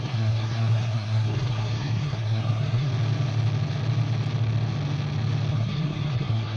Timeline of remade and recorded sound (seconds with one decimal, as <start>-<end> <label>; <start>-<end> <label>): 0.0-2.9 remade; 2.9-5.5 recorded; 5.5-6.6 remade